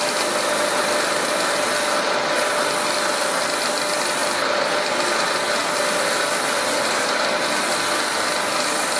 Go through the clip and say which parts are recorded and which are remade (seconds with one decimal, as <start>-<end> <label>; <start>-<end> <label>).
0.0-9.0 recorded